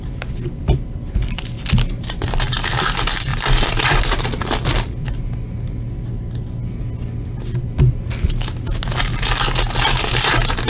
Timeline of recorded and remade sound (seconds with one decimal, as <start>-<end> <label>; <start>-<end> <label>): 0.0-3.3 recorded; 3.3-4.0 remade; 4.0-10.7 recorded